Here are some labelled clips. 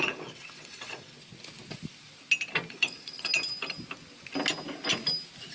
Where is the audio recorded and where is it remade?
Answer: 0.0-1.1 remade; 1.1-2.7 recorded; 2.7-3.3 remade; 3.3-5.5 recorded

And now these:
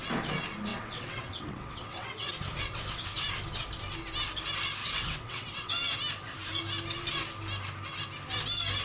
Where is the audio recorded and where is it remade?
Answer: 0.0-0.7 recorded; 0.7-2.3 remade; 2.3-4.8 recorded; 4.8-5.7 remade; 5.7-8.8 recorded

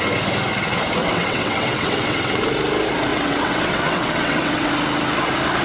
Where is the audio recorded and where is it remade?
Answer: 0.0-1.0 recorded; 1.0-2.4 remade; 2.4-3.1 recorded; 3.1-4.7 remade; 4.7-5.6 recorded

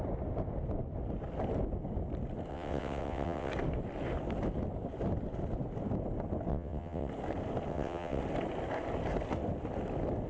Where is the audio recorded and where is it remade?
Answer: 0.0-2.5 recorded; 2.5-3.5 remade; 3.5-6.5 recorded; 6.5-7.1 remade; 7.1-7.7 recorded; 7.7-8.2 remade; 8.2-10.3 recorded

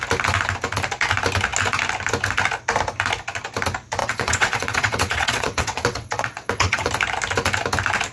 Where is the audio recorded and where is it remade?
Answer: 0.0-4.0 recorded; 4.0-6.9 remade; 6.9-8.1 recorded